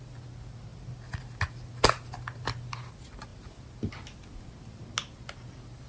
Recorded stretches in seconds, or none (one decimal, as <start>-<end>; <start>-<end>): 0.0-5.9